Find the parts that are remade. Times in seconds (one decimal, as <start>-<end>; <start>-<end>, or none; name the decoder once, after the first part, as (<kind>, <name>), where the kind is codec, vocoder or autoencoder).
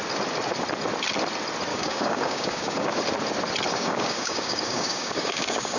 1.7-3.0 (codec, DAC); 3.7-5.8